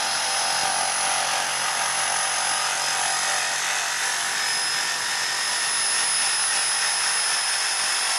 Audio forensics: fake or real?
real